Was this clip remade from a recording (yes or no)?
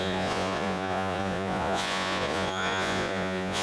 yes